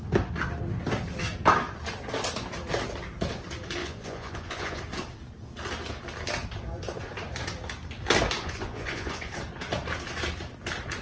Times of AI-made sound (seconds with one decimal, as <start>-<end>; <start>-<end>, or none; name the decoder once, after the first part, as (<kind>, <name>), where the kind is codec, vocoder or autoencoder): 3.8-4.8 (vocoder, Vocos); 8.4-9.3